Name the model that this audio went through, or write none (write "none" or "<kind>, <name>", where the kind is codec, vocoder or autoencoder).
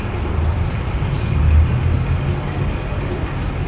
none